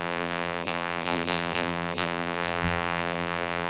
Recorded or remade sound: remade